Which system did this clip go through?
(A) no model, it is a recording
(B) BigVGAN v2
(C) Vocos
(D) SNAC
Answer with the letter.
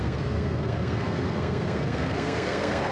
D